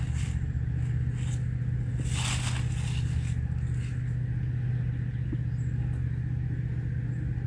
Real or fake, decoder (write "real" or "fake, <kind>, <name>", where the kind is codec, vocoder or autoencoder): real